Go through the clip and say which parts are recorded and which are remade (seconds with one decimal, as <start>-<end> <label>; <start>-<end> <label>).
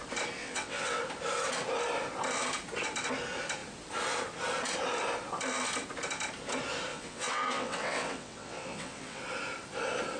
0.0-0.4 recorded; 0.4-1.0 remade; 1.0-6.9 recorded; 6.9-9.2 remade; 9.2-10.2 recorded